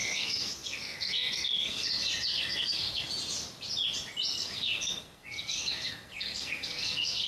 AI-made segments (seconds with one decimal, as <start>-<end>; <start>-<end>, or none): 0.0-1.9; 2.3-3.1; 4.3-7.3